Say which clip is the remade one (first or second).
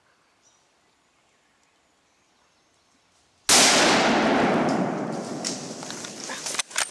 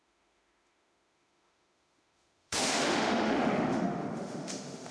second